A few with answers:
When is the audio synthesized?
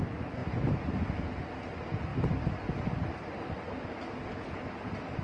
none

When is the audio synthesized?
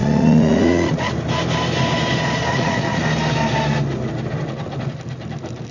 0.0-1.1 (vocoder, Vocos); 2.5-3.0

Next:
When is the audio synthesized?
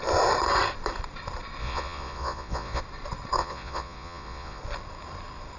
1.6-2.8 (vocoder, Vocos); 3.4-4.6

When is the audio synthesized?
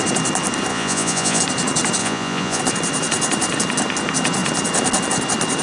0.7-1.4 (vocoder, Vocos); 2.0-2.6